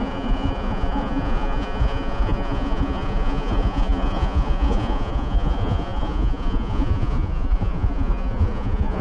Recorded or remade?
remade